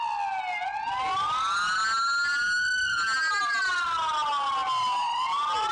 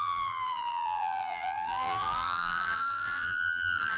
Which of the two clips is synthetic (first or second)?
second